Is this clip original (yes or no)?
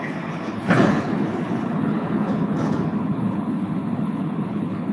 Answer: no